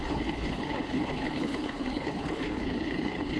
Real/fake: fake